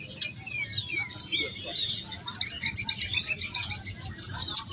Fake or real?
real